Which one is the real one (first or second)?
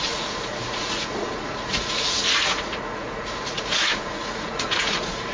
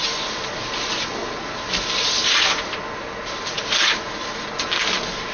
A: second